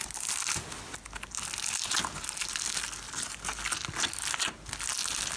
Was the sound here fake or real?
real